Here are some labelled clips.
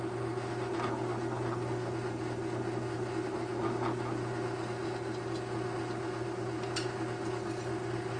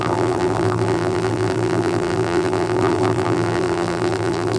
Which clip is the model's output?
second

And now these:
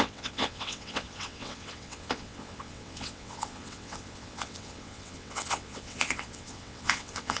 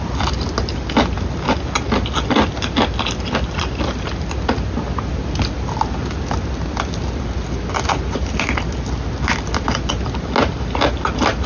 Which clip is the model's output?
first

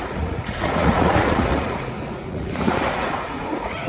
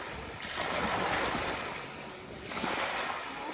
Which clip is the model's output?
first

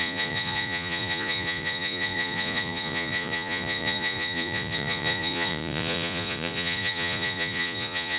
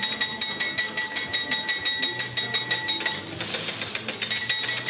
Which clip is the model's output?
first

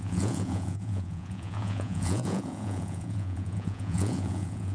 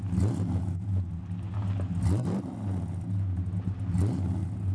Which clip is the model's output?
first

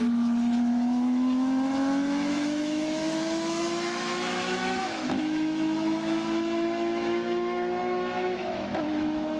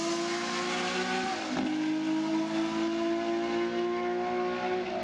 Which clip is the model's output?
first